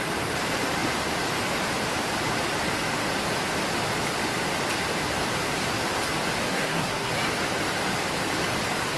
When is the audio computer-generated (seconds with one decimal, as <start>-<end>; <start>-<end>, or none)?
6.5-7.1